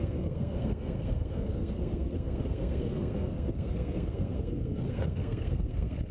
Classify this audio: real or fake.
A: fake